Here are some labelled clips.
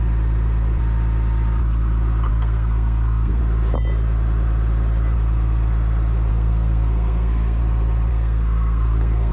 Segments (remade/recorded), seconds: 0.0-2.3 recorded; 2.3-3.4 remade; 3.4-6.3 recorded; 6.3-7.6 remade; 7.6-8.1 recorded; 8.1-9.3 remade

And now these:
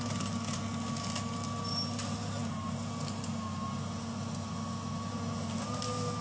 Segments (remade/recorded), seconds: 0.0-6.2 recorded

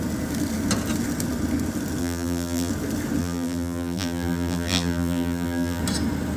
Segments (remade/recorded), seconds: 0.0-2.0 recorded; 2.0-2.7 remade; 2.7-3.2 recorded; 3.2-5.8 remade; 5.8-6.4 recorded

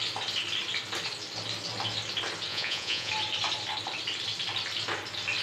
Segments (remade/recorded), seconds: 0.0-2.5 recorded; 2.5-3.1 remade; 3.1-5.4 recorded

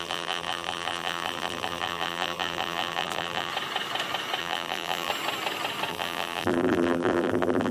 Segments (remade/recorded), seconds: 0.0-3.5 remade; 3.5-4.4 recorded; 4.4-5.1 remade; 5.1-5.9 recorded; 5.9-7.7 remade